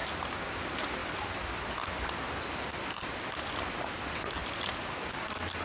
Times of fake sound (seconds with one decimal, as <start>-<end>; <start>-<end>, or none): 0.0-0.5

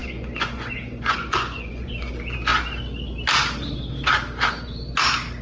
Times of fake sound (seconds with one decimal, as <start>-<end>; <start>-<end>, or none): 0.0-2.1

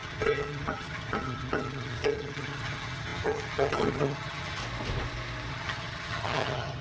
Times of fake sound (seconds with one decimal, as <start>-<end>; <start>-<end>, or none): 0.0-4.6; 5.5-6.8